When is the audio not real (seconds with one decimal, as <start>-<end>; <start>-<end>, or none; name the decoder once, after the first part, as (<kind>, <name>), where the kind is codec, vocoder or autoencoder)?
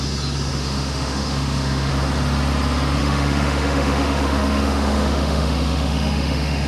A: 0.5-1.9 (autoencoder, DAC-VAE); 3.0-6.7